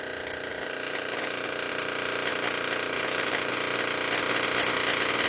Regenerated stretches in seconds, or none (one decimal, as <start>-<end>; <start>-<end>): 0.5-1.7; 2.3-3.5